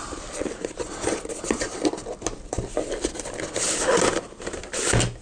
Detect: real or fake real